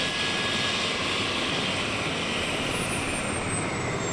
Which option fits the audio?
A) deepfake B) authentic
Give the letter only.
B